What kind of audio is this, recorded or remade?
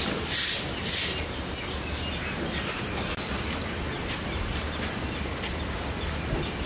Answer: recorded